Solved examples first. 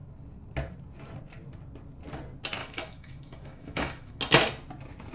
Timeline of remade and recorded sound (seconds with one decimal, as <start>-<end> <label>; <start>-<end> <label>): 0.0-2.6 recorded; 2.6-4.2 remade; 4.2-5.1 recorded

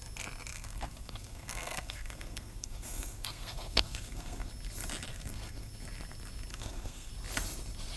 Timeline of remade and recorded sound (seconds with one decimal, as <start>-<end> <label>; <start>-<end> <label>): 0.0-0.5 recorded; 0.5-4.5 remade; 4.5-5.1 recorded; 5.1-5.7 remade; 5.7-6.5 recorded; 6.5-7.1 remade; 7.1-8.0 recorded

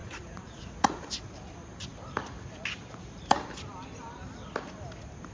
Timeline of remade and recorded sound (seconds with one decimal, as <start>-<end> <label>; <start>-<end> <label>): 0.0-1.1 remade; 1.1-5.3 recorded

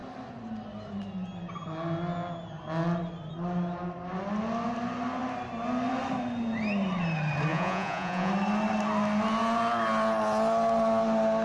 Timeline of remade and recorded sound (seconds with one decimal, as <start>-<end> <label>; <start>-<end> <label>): 0.0-7.5 recorded; 7.5-8.3 remade; 8.3-11.4 recorded